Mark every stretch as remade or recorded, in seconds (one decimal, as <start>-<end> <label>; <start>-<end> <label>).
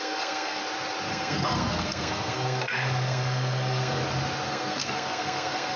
0.0-0.6 remade; 0.6-1.1 recorded; 1.1-4.0 remade; 4.0-4.5 recorded; 4.5-5.8 remade